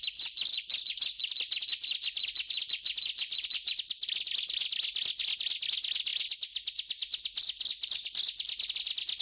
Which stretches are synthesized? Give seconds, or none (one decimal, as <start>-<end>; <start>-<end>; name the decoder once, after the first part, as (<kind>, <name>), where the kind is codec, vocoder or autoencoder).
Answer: none